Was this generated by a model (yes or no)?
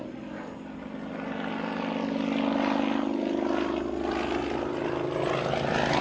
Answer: no